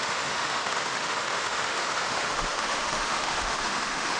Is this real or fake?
fake